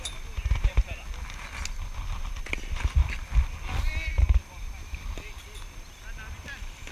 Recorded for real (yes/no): yes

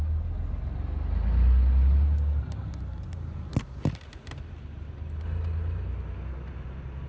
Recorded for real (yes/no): yes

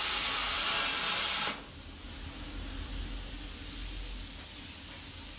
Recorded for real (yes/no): yes